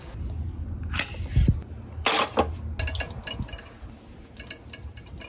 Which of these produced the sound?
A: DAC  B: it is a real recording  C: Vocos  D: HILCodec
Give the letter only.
B